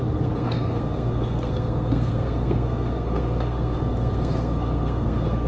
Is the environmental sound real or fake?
fake